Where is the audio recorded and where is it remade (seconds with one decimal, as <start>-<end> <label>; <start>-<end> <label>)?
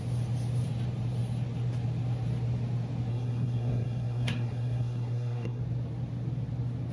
0.0-3.1 recorded; 3.1-5.6 remade; 5.6-6.9 recorded